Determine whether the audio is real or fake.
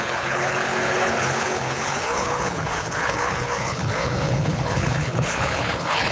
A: fake